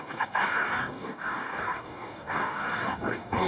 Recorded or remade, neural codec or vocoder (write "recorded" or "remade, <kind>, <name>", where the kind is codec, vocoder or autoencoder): remade, codec, DAC